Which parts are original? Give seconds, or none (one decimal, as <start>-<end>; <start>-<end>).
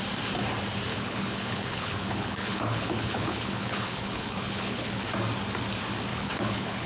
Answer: 0.0-0.9; 5.0-6.1